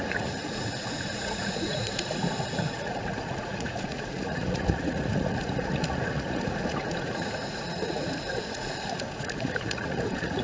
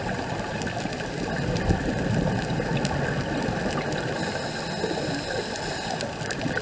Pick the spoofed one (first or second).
first